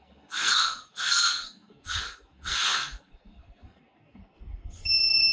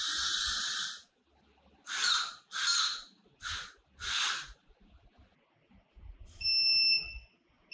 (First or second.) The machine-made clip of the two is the first